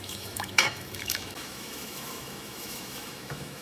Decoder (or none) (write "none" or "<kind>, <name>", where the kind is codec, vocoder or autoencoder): autoencoder, DAC-VAE